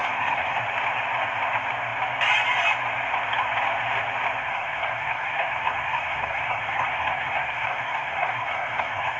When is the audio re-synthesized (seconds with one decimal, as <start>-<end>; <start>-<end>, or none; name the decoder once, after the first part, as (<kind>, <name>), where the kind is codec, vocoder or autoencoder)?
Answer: 0.0-0.6 (codec, SNAC); 4.4-9.2

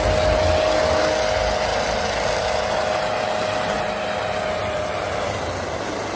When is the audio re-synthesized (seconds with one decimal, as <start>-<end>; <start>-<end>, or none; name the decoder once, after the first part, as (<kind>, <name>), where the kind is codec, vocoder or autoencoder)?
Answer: none

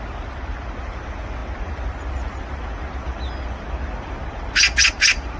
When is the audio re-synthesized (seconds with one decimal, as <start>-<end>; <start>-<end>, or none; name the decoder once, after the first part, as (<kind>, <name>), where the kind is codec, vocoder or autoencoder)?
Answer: none

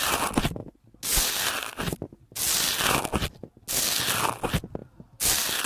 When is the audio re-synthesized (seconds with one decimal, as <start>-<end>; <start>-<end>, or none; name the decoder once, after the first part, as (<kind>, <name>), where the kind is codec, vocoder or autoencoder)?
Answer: none

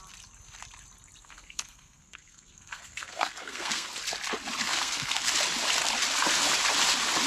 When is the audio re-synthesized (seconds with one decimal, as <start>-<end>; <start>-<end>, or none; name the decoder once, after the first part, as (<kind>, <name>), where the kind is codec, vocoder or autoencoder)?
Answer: 1.2-3.9 (codec, SNAC); 4.6-5.3

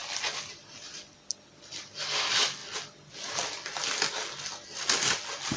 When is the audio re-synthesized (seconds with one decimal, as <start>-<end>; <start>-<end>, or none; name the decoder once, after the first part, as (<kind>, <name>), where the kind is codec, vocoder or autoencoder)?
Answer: none

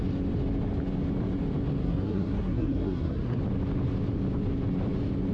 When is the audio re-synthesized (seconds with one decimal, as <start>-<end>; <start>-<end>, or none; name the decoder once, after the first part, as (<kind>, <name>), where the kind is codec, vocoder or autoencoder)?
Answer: 1.8-3.4 (codec, SNAC)